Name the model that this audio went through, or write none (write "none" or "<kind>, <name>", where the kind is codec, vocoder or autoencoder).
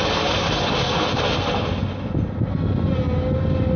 none